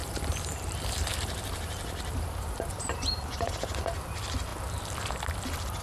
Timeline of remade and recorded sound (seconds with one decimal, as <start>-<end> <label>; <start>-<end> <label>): 0.0-3.5 remade; 3.5-5.8 recorded